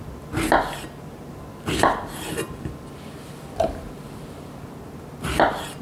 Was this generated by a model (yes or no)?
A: no